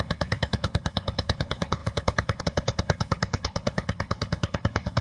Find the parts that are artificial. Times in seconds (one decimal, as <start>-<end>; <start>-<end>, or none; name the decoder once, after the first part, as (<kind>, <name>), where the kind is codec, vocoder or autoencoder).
0.0-5.0 (codec, HILCodec)